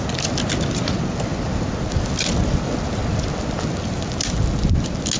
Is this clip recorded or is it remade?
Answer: recorded